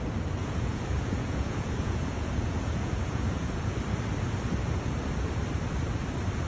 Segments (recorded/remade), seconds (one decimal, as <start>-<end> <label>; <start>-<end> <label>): 0.0-0.4 recorded; 0.4-3.5 remade; 3.5-6.5 recorded